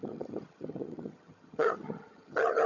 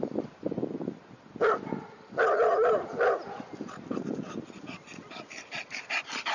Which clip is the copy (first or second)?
first